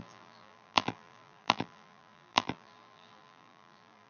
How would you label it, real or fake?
fake